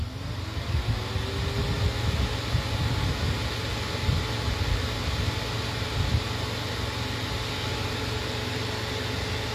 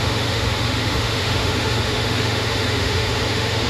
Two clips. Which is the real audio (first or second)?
first